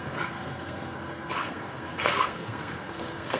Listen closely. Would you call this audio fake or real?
fake